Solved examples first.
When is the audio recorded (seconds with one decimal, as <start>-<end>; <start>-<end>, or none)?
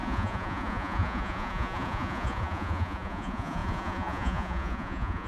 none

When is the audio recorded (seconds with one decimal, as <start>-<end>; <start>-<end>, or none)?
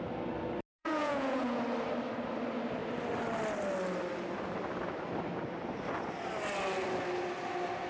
0.0-0.8; 1.6-7.9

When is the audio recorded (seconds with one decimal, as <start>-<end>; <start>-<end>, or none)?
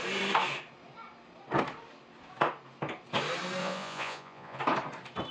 0.0-3.6; 4.6-5.3